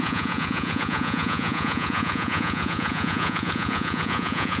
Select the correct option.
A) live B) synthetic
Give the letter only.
B